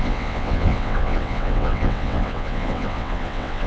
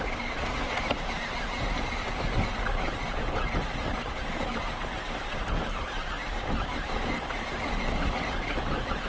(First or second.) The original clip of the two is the second